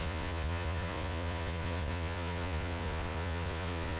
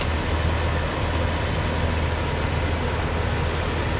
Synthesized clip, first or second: first